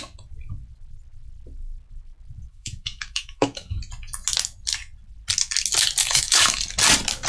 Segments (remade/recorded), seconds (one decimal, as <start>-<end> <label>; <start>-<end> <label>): 0.0-2.5 recorded; 2.5-3.8 remade; 3.8-6.0 recorded; 6.0-6.6 remade; 6.6-7.3 recorded